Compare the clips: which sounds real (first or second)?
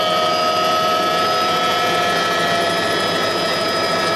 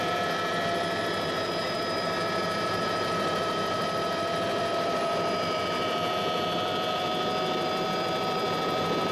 first